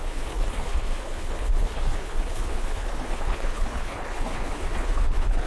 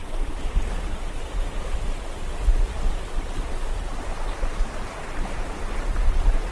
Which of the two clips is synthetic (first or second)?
first